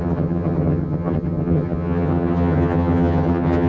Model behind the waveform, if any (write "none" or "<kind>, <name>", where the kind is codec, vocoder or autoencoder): vocoder, HiFi-GAN